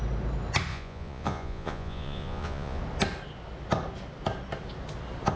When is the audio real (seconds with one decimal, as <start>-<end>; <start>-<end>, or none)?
0.0-0.7; 2.8-5.4